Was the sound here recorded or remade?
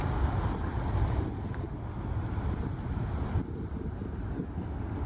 recorded